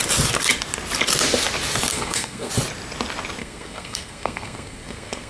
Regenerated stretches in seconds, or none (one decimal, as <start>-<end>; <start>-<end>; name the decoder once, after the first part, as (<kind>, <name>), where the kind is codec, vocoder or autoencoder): 1.9-2.5 (codec, SNAC); 3.4-5.3